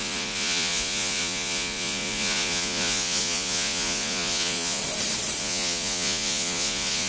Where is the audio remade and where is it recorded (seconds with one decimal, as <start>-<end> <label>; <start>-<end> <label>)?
0.0-4.8 remade; 4.8-5.4 recorded; 5.4-7.1 remade